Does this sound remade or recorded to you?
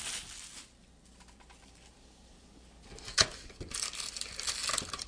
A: recorded